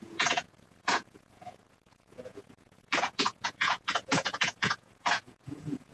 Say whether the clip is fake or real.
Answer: fake